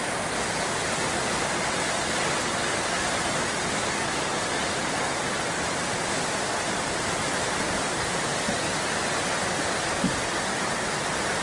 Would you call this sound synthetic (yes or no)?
no